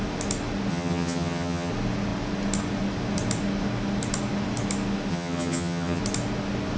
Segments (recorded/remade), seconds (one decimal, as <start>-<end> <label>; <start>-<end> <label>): 0.0-0.7 recorded; 0.7-1.7 remade; 1.7-5.1 recorded; 5.1-6.0 remade; 6.0-6.8 recorded